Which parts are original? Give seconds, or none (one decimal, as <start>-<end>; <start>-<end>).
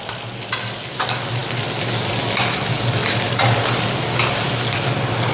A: 0.0-5.3